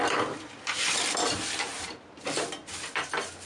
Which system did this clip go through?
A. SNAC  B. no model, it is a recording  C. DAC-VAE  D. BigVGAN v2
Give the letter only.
B